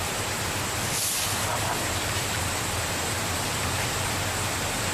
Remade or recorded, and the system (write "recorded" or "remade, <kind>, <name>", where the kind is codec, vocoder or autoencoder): remade, vocoder, BigVGAN v2